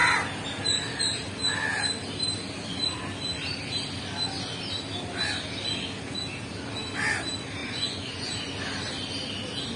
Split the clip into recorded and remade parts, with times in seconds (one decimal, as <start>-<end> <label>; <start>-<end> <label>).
0.0-7.6 recorded; 7.6-8.3 remade; 8.3-9.8 recorded